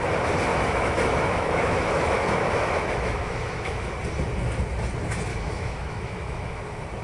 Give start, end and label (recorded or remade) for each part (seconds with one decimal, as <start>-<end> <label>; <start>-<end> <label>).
0.0-0.5 recorded; 0.5-3.9 remade; 3.9-5.3 recorded; 5.3-6.6 remade; 6.6-7.0 recorded